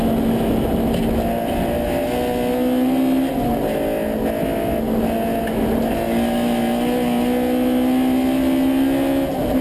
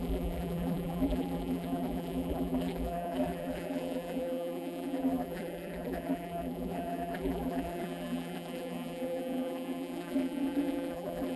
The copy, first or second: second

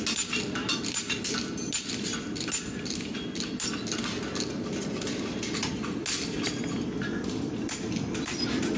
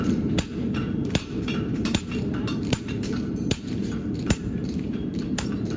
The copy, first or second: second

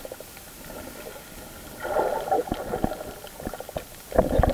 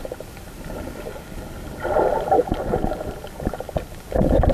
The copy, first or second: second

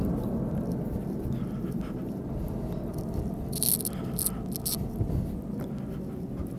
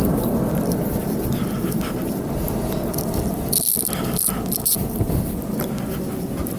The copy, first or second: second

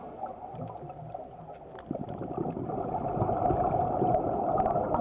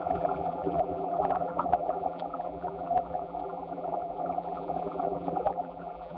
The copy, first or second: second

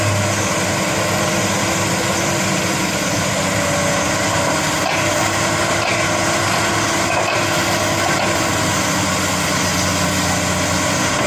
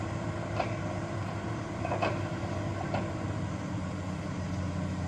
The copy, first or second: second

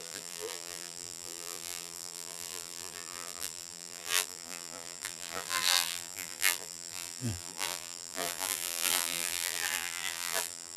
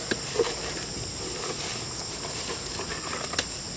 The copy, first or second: first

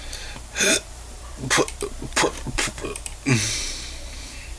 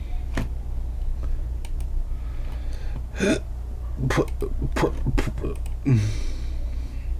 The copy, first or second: first